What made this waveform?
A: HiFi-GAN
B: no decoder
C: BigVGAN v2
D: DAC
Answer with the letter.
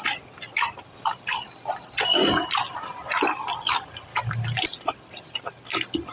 C